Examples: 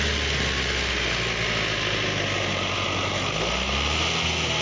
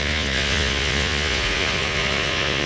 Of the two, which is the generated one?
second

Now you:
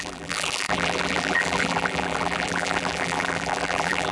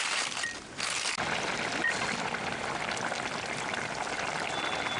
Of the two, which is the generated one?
first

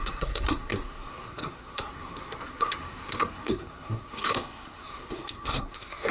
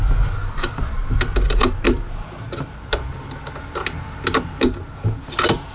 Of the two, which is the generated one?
first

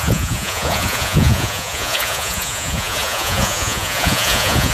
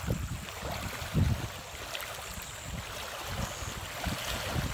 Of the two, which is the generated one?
first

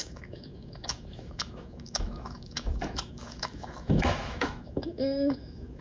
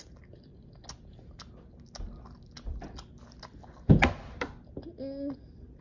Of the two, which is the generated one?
first